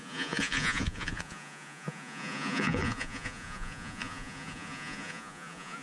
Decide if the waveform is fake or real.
fake